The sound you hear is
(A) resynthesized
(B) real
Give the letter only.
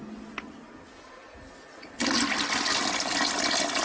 B